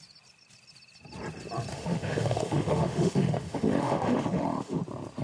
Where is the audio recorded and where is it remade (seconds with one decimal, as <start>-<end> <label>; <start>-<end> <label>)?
0.0-1.7 recorded; 1.7-4.8 remade; 4.8-5.2 recorded